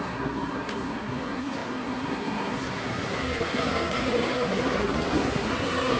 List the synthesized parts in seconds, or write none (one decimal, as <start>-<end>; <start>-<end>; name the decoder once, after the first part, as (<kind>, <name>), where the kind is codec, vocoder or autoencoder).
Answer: 0.0-6.0 (codec, SNAC)